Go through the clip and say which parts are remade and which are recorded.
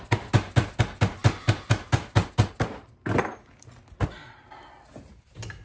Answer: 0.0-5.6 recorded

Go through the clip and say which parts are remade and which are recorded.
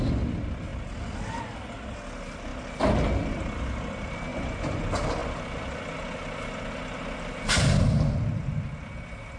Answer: 0.0-4.3 recorded; 4.3-4.8 remade; 4.8-9.4 recorded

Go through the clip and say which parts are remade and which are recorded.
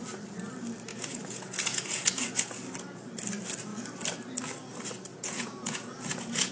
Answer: 0.0-0.9 recorded; 0.9-2.5 remade; 2.5-5.1 recorded; 5.1-6.5 remade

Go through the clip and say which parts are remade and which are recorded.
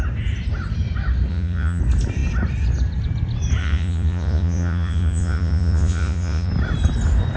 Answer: 0.0-1.3 recorded; 1.3-1.8 remade; 1.8-3.6 recorded; 3.6-6.5 remade; 6.5-7.4 recorded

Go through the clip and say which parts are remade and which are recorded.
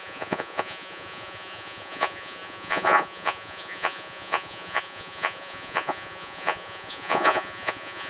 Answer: 0.0-8.1 remade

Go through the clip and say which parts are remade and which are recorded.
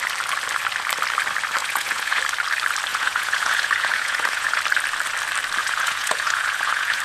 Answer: 0.0-1.6 recorded; 1.6-2.2 remade; 2.2-2.9 recorded; 2.9-4.6 remade; 4.6-5.6 recorded; 5.6-7.0 remade